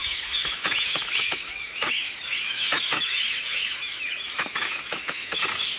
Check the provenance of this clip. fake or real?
fake